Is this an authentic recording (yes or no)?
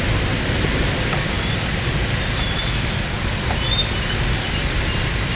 yes